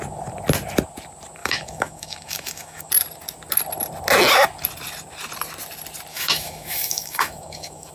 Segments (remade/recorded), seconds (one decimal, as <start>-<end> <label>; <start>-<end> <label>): 0.0-1.4 recorded; 1.4-2.9 remade; 2.9-6.1 recorded; 6.1-7.9 remade